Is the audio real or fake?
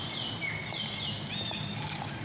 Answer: real